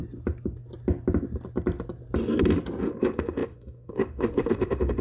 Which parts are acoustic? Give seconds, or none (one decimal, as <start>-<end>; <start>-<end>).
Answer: 0.0-3.0